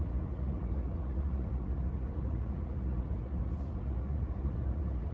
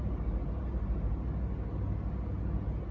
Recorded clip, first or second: second